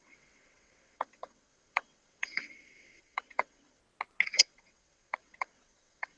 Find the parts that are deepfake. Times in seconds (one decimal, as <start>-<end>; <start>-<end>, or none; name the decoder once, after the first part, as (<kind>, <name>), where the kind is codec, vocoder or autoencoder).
0.0-3.8 (vocoder, WaveNeXt); 4.3-6.2